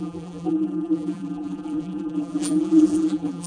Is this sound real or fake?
fake